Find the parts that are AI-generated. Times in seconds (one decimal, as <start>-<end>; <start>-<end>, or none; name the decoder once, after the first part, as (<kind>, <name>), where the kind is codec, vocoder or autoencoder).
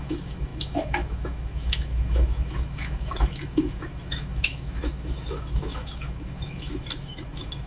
0.0-7.7 (autoencoder, DAC-VAE)